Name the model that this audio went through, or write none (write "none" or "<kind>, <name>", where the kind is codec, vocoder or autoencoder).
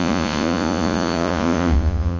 vocoder, Vocos